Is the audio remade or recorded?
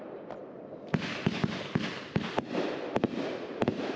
recorded